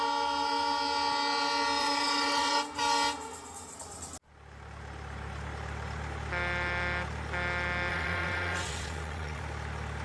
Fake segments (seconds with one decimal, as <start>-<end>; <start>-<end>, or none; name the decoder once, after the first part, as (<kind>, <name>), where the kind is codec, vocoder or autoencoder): 1.8-2.6 (vocoder, WaveNeXt); 7.9-9.4